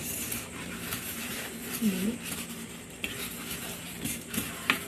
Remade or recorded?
remade